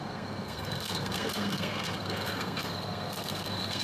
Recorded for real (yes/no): no